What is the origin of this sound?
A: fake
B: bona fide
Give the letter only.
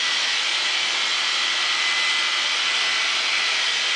B